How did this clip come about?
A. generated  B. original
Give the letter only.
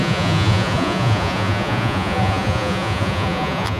A